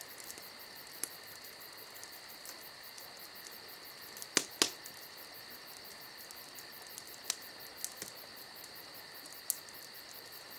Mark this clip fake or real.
real